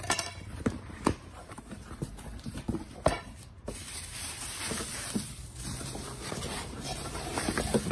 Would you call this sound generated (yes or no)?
yes